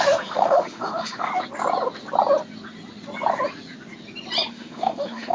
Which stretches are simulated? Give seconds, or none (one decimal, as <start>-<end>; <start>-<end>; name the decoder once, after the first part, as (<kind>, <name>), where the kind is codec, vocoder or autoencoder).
0.0-1.3 (autoencoder, DAC-VAE); 4.5-5.3